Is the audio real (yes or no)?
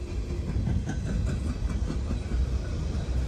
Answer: yes